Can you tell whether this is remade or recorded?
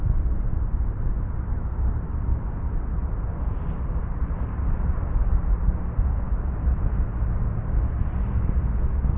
recorded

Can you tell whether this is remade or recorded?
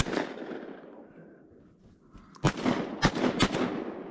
recorded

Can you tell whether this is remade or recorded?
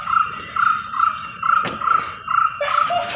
recorded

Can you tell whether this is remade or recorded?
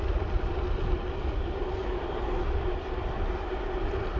remade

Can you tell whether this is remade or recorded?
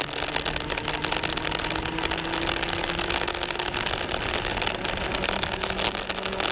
recorded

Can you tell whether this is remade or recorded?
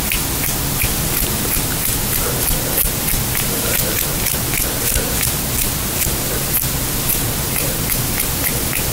recorded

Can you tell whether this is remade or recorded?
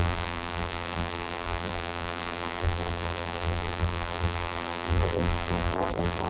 remade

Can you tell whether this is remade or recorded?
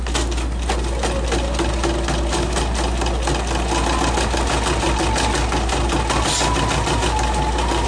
recorded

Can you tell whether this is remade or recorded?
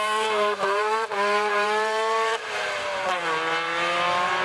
remade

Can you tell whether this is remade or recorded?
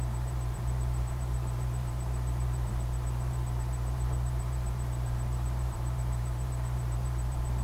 remade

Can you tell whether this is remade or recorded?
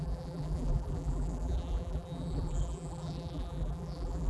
remade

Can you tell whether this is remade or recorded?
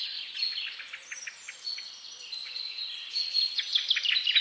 recorded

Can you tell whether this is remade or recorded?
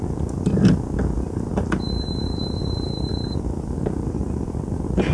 remade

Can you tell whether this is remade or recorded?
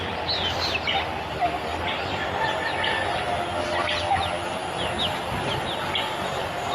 recorded